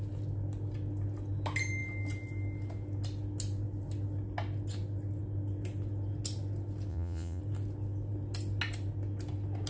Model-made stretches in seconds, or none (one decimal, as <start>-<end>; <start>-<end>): 6.9-7.4